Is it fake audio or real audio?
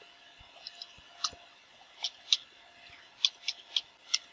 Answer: real